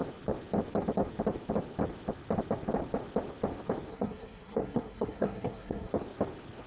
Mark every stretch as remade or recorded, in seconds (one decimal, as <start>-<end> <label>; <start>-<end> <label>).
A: 0.0-3.9 recorded; 3.9-5.9 remade; 5.9-6.7 recorded